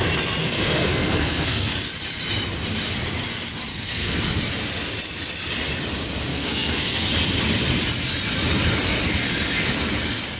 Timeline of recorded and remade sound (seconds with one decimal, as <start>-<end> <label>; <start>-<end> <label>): 0.0-0.4 recorded; 0.4-1.7 remade; 1.7-3.7 recorded; 3.7-4.2 remade; 4.2-6.3 recorded; 6.3-7.1 remade; 7.1-10.4 recorded